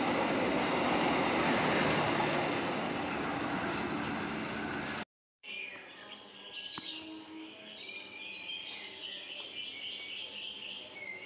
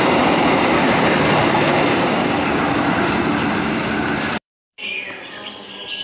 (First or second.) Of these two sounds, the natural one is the first